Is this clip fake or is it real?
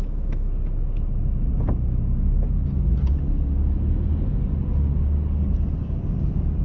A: real